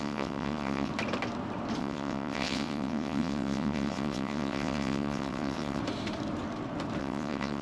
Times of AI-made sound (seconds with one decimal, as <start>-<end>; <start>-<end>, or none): 0.0-0.9; 1.8-5.8; 7.0-7.6